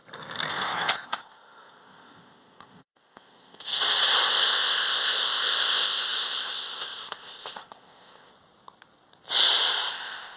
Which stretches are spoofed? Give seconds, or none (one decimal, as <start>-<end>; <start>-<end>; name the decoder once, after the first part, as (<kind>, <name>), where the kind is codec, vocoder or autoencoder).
0.5-3.7 (codec, ZipCodec); 4.3-8.3; 9.9-10.4